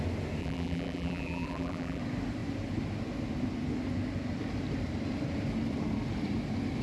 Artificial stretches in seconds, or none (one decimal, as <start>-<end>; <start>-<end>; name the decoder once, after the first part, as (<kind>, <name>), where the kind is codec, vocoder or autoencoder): 0.4-2.0 (vocoder, BigVGAN v2)